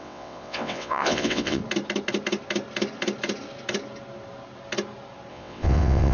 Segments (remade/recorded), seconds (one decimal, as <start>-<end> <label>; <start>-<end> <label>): 0.0-1.6 remade; 1.6-5.3 recorded; 5.3-6.1 remade